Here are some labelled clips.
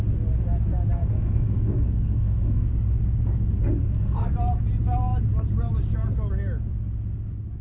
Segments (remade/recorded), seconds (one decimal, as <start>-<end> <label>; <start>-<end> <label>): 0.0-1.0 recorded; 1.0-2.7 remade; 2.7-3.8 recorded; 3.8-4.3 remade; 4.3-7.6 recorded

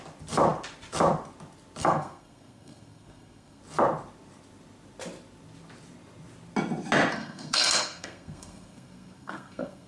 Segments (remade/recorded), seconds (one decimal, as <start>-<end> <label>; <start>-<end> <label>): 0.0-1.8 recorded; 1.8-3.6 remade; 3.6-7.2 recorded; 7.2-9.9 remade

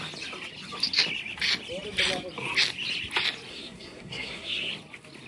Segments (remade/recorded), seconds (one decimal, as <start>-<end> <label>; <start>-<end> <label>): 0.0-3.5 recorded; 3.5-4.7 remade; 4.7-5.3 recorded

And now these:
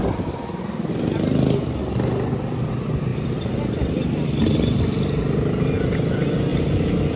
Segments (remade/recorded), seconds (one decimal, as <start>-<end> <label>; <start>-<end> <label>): 0.0-7.2 recorded